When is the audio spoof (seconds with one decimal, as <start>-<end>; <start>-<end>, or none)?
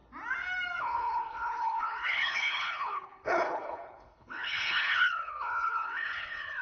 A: 0.8-6.6